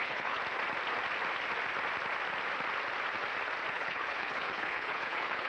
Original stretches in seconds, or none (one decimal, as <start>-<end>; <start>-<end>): 0.4-3.7

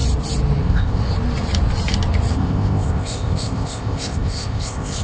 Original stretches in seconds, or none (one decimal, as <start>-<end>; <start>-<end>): 0.0-0.6; 1.0-2.3

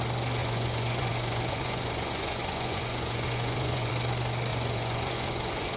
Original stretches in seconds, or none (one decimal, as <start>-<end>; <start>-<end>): 0.0-0.4; 3.9-4.5

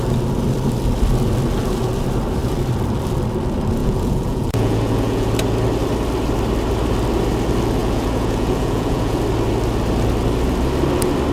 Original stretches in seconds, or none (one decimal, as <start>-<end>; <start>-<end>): 0.0-3.8; 5.3-7.8; 9.2-11.3

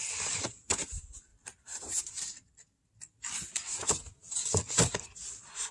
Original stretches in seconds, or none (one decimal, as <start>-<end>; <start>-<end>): 0.0-5.7

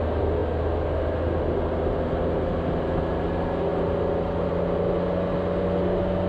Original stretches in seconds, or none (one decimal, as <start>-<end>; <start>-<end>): 0.0-6.3

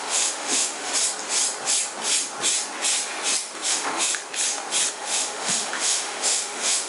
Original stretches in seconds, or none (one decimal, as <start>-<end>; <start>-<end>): 0.9-3.7; 4.2-4.9